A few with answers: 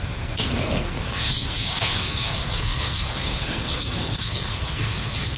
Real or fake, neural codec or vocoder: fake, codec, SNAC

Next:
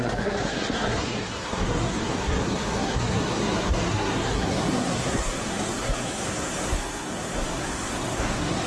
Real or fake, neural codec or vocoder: fake, codec, SNAC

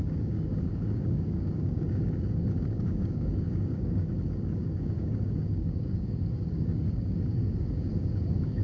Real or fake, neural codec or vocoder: fake, codec, DAC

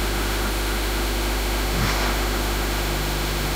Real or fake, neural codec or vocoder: fake, autoencoder, DAC-VAE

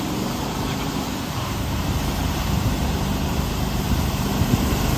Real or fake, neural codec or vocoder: fake, vocoder, BigVGAN v2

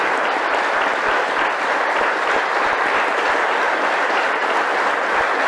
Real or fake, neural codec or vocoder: real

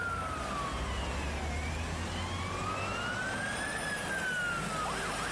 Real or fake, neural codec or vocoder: real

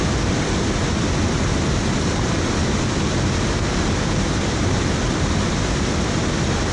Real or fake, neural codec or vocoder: real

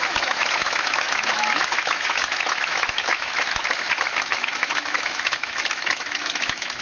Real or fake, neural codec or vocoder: fake, autoencoder, DAC-VAE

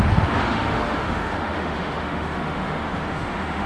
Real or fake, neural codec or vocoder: fake, autoencoder, DAC-VAE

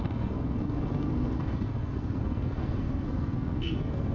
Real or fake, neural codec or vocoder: fake, codec, SNAC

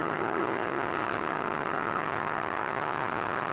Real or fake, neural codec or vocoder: fake, vocoder, HiFi-GAN